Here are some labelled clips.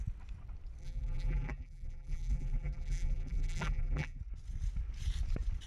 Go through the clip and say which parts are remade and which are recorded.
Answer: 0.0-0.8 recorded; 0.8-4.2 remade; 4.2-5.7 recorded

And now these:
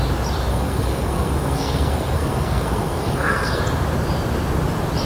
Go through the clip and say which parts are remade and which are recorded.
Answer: 0.0-0.5 recorded; 0.5-3.6 remade; 3.6-5.1 recorded

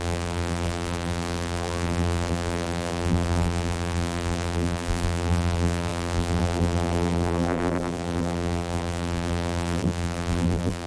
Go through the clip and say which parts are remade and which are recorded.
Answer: 0.0-10.9 remade

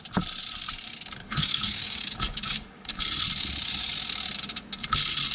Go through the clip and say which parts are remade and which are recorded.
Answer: 0.0-1.2 recorded; 1.2-3.0 remade; 3.0-5.3 recorded

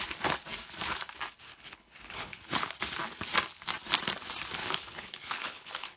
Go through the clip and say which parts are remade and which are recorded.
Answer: 0.0-1.5 recorded; 1.5-2.7 remade; 2.7-4.6 recorded; 4.6-6.0 remade

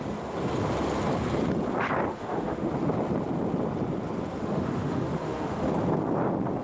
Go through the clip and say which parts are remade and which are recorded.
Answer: 0.0-2.1 recorded; 2.1-2.7 remade; 2.7-4.4 recorded; 4.4-5.7 remade; 5.7-6.6 recorded

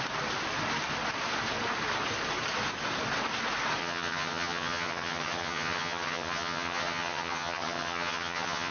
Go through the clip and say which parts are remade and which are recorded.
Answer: 0.0-3.8 recorded; 3.8-8.7 remade